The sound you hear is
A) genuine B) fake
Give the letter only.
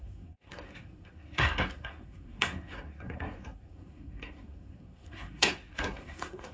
B